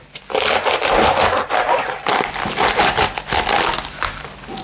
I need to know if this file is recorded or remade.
recorded